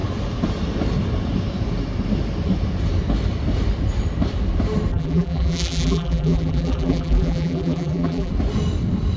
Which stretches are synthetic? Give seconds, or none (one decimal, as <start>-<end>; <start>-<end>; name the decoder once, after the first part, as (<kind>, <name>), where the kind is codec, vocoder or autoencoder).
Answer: 4.9-8.3 (vocoder, BigVGAN v2)